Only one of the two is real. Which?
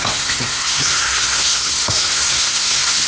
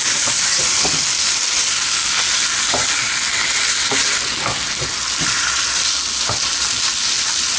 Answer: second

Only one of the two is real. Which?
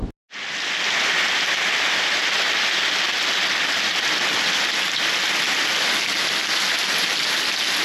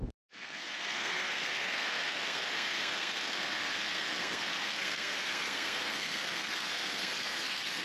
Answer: first